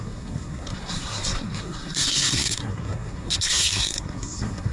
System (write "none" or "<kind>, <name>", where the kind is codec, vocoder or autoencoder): codec, SNAC